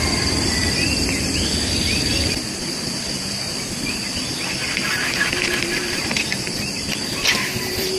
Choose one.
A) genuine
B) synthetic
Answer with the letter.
B